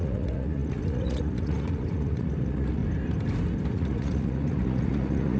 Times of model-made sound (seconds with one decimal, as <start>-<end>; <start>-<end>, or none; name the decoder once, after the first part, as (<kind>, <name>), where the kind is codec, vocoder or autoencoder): 0.0-2.8 (vocoder, Vocos); 3.7-5.4